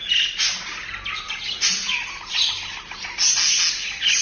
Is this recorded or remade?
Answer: recorded